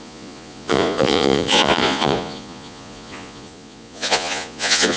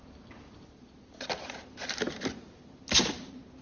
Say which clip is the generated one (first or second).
first